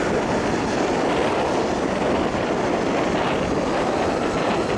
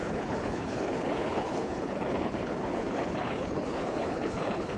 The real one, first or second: first